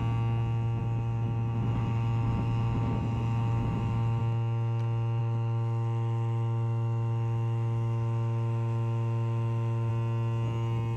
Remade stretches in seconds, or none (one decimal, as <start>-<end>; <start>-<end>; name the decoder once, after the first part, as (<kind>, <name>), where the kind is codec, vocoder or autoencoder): 0.8-4.2 (autoencoder, DAC-VAE); 5.2-9.9